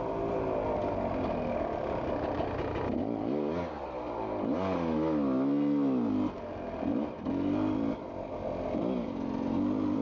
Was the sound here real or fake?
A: real